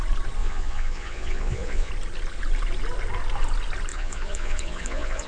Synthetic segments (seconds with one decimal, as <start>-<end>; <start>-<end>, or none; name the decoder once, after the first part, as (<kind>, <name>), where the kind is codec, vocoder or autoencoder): 0.4-1.9 (vocoder, Vocos); 3.9-5.3